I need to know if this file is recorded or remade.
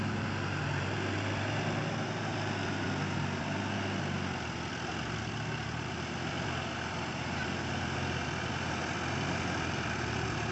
recorded